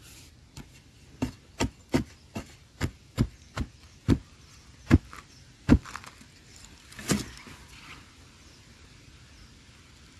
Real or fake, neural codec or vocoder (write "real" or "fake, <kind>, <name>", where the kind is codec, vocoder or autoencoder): real